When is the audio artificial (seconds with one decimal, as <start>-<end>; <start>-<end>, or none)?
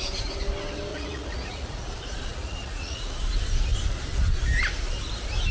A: 0.9-1.9; 2.3-3.2